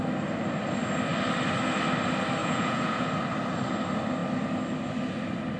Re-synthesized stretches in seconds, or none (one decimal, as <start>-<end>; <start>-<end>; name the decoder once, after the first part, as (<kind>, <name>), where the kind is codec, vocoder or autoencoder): 2.4-3.1 (vocoder, Vocos)